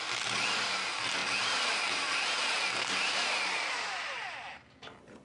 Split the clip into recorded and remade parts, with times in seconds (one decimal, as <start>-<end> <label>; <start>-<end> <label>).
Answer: 0.0-5.2 recorded